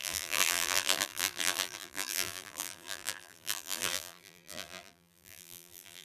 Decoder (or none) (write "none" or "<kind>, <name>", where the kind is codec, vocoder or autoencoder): vocoder, BigVGAN v2